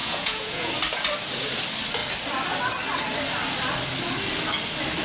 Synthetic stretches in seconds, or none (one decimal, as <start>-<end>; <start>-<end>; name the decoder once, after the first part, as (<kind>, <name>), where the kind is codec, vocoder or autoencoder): 0.0-0.7 (vocoder, Vocos)